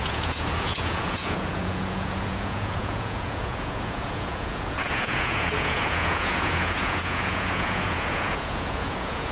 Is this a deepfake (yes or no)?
yes